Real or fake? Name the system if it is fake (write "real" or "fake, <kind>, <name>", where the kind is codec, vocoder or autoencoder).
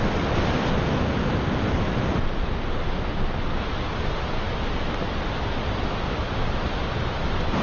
real